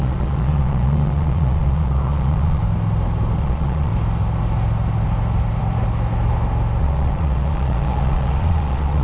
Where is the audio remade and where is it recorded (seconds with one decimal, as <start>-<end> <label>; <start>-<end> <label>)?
0.0-2.6 remade; 2.6-3.4 recorded; 3.4-3.9 remade; 3.9-6.8 recorded; 6.8-9.0 remade